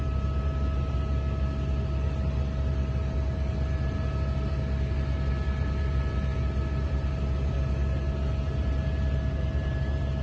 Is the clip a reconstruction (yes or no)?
no